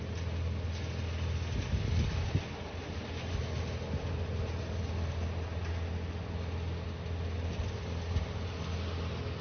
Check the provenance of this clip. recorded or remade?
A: recorded